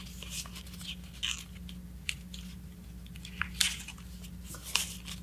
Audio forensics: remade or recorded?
recorded